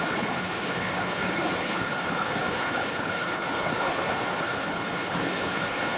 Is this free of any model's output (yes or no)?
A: no